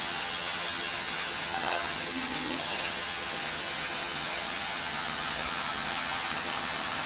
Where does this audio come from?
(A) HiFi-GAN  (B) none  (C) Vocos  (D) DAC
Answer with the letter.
A